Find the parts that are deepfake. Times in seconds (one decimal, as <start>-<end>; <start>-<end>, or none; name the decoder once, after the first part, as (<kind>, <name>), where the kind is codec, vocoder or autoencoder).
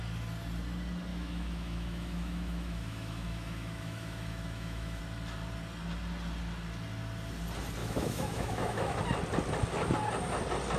1.1-5.0 (autoencoder, DAC-VAE); 7.8-9.0